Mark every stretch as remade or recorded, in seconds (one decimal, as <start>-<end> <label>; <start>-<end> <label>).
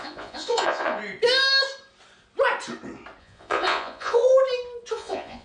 0.0-1.0 remade; 1.0-3.2 recorded; 3.2-4.2 remade; 4.2-4.9 recorded; 4.9-5.4 remade